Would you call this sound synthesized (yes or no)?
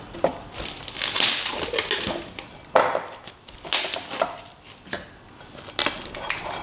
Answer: no